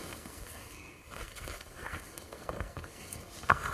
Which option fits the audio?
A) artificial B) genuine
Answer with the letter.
A